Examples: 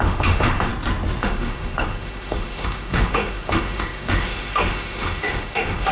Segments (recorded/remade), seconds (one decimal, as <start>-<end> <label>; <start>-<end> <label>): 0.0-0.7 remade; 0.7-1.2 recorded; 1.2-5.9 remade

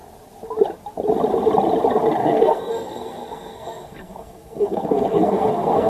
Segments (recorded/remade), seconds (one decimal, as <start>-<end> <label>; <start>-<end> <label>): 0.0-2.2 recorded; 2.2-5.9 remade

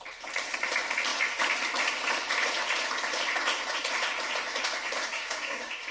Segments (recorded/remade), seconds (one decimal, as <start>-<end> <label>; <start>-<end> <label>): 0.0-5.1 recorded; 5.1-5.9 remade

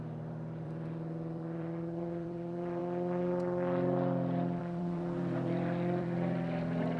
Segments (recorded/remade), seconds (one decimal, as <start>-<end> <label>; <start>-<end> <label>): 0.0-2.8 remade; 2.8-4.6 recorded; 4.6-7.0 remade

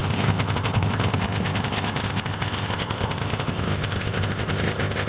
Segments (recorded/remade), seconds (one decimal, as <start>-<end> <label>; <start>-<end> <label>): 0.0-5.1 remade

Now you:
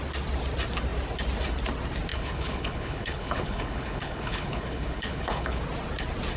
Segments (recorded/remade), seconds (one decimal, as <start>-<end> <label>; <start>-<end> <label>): 0.0-2.1 recorded; 2.1-5.6 remade; 5.6-6.4 recorded